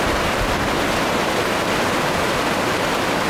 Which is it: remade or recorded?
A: recorded